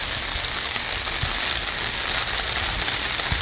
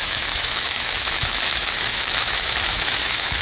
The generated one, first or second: second